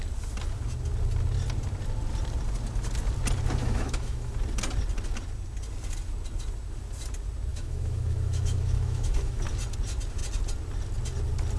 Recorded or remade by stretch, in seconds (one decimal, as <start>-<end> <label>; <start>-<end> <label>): 0.0-3.6 recorded; 3.6-4.4 remade; 4.4-7.5 recorded; 7.5-9.4 remade; 9.4-11.6 recorded